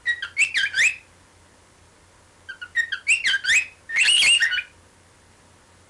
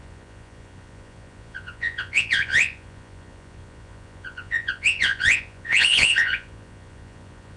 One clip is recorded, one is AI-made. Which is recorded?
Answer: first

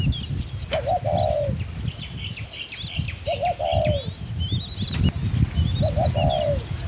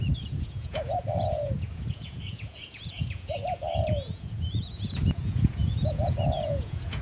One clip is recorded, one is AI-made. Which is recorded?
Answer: first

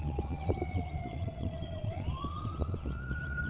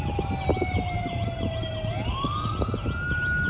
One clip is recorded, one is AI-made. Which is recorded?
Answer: second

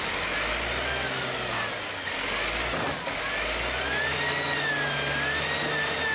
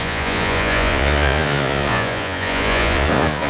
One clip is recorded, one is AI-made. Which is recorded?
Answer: first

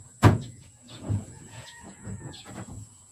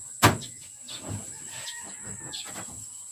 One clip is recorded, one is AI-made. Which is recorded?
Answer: second